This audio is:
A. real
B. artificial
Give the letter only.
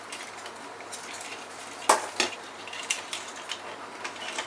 A